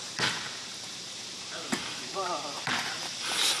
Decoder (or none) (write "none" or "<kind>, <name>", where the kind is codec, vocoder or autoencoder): vocoder, BigVGAN v2